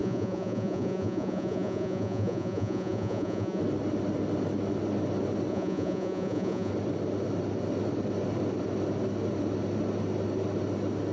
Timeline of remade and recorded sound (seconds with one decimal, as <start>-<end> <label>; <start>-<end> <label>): 0.0-3.6 remade; 3.6-5.5 recorded; 5.5-6.7 remade; 6.7-11.1 recorded